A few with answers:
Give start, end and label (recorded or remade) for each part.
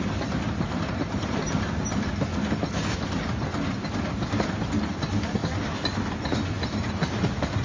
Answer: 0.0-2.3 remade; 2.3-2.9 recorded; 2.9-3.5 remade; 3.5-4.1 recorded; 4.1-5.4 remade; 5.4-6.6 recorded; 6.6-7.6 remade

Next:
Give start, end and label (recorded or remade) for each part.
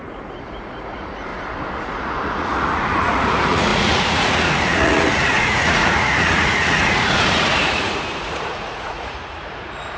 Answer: 0.0-1.3 remade; 1.3-1.8 recorded; 1.8-10.0 remade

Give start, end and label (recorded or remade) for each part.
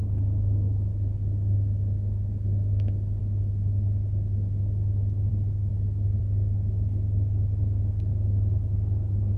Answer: 0.0-9.4 recorded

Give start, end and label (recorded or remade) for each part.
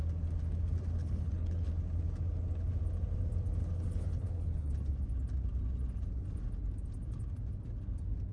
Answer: 0.0-1.0 recorded; 1.0-1.7 remade; 1.7-3.6 recorded; 3.6-4.7 remade; 4.7-8.3 recorded